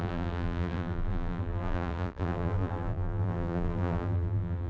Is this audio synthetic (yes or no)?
yes